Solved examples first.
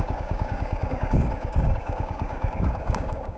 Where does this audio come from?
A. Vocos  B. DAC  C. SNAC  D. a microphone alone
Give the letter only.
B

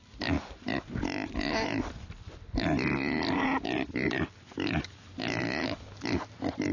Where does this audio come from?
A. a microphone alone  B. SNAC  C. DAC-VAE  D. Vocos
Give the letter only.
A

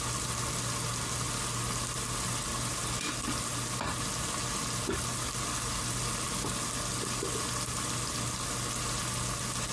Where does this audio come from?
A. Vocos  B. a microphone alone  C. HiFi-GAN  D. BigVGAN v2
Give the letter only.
B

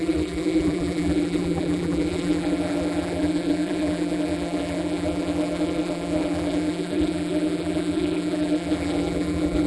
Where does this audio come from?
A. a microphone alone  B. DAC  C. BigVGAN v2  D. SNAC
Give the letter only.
C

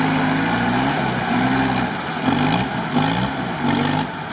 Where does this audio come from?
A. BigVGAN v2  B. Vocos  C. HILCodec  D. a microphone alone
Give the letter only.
D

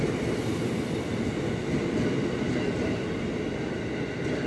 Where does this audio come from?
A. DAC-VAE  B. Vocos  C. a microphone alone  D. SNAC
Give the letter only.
C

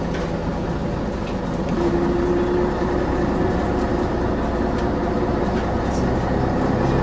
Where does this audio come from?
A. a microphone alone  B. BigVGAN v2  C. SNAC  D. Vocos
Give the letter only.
A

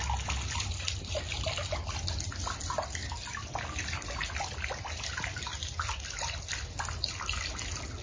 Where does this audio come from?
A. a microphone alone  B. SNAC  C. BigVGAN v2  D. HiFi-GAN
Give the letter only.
A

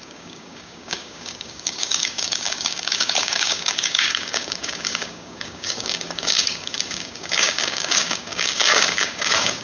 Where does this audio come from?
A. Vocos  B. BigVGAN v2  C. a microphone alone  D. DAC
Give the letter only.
D